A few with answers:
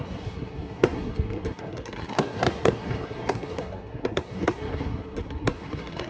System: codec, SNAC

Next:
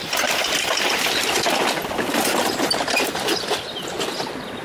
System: none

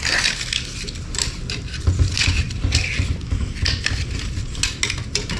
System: none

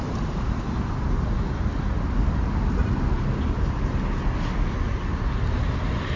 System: none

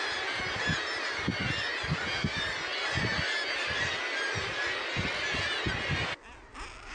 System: none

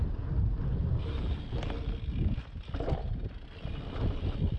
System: none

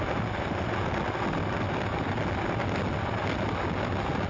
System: none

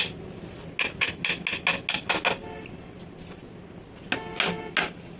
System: none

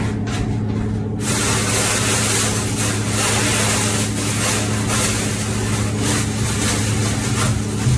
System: none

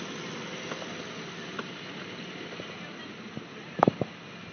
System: none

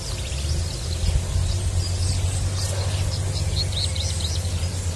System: none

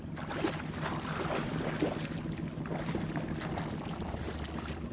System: none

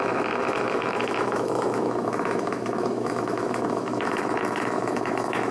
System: autoencoder, DAC-VAE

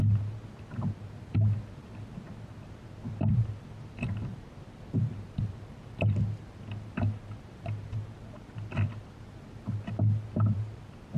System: none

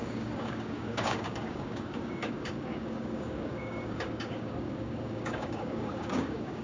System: codec, DAC